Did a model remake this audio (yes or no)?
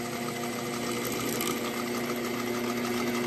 no